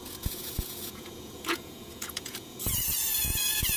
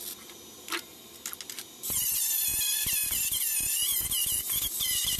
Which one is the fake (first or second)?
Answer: first